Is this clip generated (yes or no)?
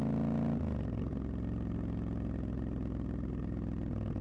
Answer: no